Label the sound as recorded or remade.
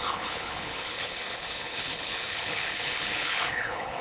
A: remade